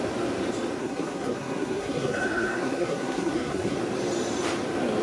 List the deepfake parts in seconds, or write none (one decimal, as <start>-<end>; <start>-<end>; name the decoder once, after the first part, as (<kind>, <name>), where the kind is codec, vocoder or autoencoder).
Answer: 0.8-3.8 (codec, SNAC)